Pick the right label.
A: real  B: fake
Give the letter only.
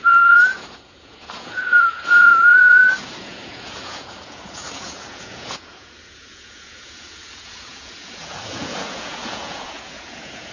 B